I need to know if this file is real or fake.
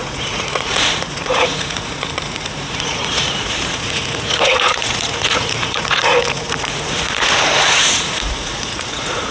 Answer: fake